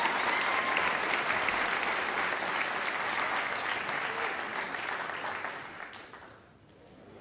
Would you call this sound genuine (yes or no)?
yes